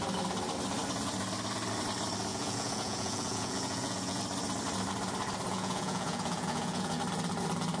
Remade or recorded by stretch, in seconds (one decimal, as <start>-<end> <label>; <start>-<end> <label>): 0.0-2.3 recorded; 2.3-4.2 remade; 4.2-5.5 recorded; 5.5-7.0 remade; 7.0-7.8 recorded